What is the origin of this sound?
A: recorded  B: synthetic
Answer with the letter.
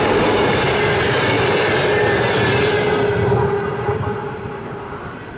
A